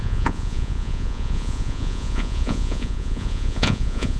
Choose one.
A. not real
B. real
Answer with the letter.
A